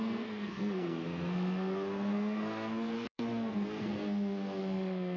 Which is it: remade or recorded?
remade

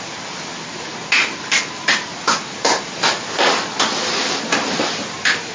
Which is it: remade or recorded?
recorded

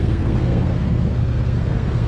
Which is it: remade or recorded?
remade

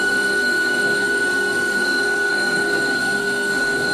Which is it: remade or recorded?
remade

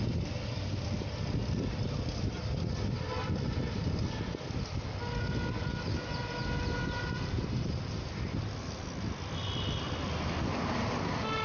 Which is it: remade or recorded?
recorded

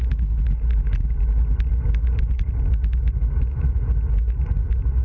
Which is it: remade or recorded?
recorded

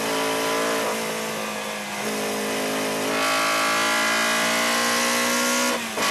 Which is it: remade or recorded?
recorded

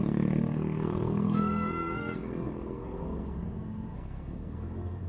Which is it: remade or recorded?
remade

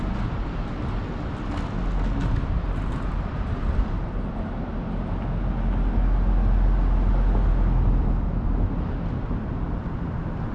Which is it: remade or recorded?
recorded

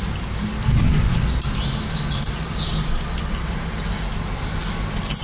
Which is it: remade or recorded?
recorded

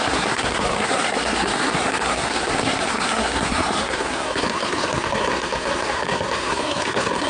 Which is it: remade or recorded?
remade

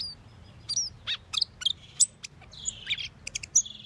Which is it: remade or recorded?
recorded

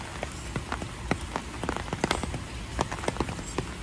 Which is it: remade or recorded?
recorded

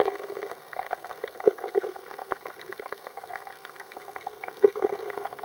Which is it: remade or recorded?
remade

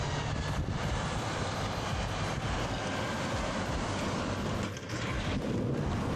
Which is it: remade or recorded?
recorded